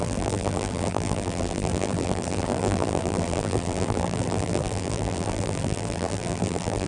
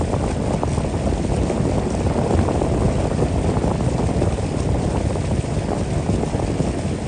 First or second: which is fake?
first